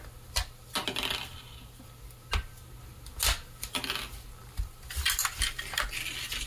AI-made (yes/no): no